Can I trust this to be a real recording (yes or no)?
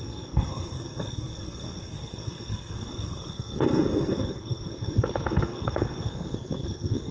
no